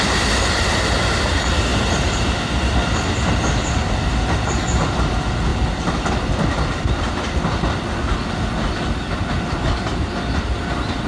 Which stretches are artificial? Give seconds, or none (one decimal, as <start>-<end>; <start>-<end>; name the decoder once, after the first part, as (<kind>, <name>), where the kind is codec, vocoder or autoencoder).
none